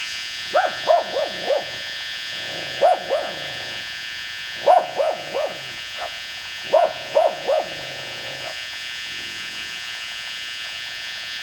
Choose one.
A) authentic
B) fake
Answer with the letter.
B